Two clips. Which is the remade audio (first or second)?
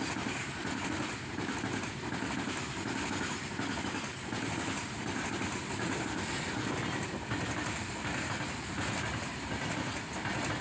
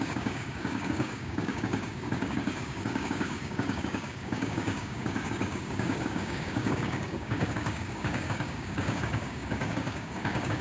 second